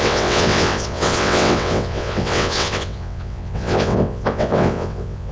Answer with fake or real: fake